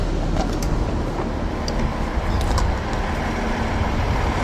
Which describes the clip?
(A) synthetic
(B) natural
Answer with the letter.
B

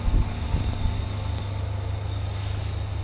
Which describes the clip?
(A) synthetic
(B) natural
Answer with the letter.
B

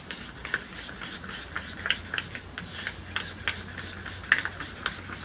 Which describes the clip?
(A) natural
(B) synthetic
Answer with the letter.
A